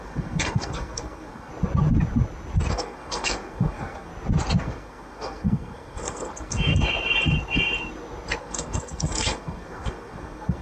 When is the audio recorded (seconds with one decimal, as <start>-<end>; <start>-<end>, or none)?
1.5-2.7; 4.1-4.6; 6.7-8.4